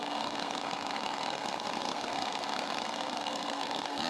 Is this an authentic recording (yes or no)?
no